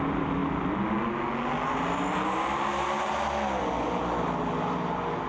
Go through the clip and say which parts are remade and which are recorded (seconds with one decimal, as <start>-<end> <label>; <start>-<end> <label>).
0.0-5.3 recorded